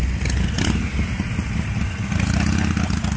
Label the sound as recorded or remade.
recorded